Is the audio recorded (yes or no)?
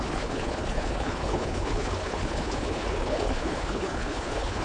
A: no